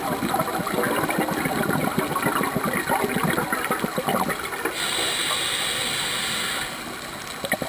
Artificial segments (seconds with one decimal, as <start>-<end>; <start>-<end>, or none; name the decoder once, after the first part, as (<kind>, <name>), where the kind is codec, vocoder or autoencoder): none